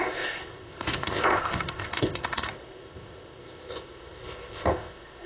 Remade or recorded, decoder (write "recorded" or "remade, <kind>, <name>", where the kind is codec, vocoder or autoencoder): remade, codec, ZipCodec